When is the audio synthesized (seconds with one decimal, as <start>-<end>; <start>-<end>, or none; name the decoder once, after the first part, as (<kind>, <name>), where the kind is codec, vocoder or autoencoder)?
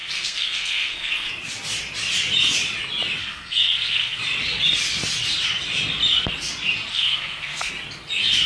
0.0-1.3 (codec, SNAC); 3.2-4.2; 6.9-7.7